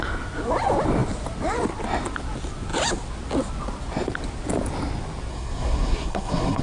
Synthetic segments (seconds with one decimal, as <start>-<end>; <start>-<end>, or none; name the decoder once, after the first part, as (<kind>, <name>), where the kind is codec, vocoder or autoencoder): 5.3-6.6 (codec, SNAC)